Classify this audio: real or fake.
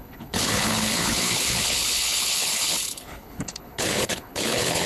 fake